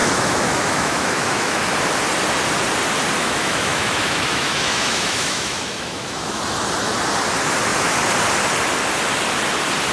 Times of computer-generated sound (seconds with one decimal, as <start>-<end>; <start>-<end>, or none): 0.0-1.6; 3.2-6.4